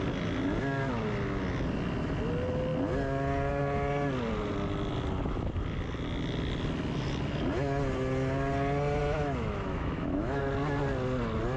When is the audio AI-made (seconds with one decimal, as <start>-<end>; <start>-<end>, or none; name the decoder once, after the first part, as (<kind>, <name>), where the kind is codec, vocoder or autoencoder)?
9.0-10.4 (autoencoder, DAC-VAE)